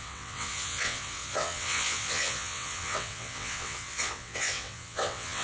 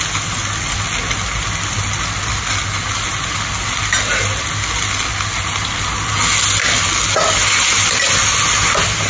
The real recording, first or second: second